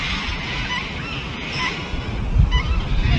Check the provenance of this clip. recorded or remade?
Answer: recorded